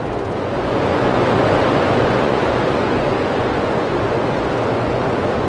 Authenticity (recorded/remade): remade